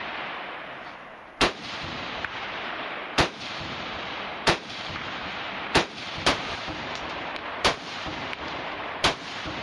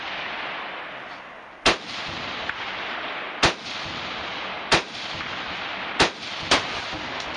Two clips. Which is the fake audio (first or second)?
first